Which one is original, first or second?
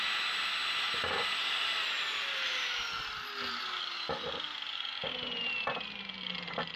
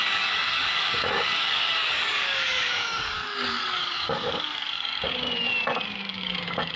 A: first